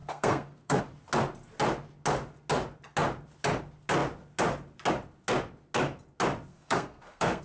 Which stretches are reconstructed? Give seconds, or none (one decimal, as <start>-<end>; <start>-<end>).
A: 0.0-0.8; 6.5-7.4